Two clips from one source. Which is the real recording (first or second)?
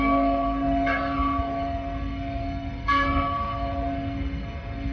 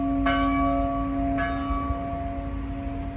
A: second